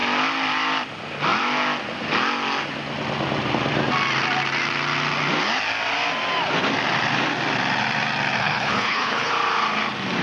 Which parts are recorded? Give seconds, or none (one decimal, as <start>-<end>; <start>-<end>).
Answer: 0.0-8.4; 9.3-10.2